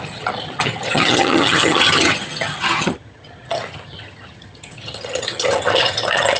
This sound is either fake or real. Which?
fake